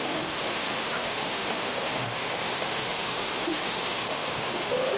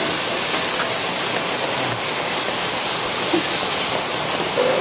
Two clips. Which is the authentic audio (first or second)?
second